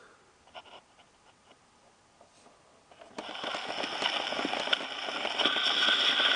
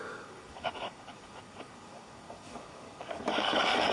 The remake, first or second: second